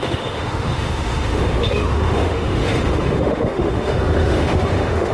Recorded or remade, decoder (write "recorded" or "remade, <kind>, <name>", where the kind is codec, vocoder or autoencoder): remade, autoencoder, DAC-VAE